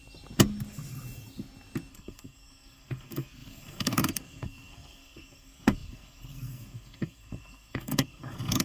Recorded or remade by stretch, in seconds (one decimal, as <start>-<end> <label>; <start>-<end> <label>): 0.0-1.9 recorded; 1.9-8.6 remade